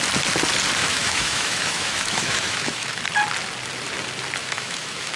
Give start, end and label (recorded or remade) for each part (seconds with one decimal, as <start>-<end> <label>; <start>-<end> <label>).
0.0-0.8 recorded; 0.8-3.0 remade; 3.0-4.4 recorded; 4.4-5.2 remade